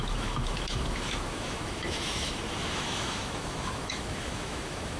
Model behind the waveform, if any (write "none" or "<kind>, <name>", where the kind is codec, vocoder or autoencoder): autoencoder, DAC-VAE